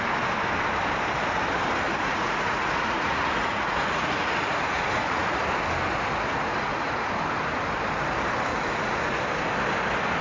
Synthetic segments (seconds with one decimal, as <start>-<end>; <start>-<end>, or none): 2.0-5.4; 6.5-7.1; 8.5-9.2